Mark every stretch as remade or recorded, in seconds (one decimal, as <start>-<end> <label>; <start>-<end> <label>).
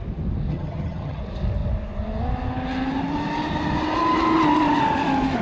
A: 0.0-0.5 recorded; 0.5-1.2 remade; 1.2-5.4 recorded